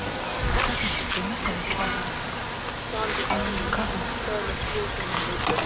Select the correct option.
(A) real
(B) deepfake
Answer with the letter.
A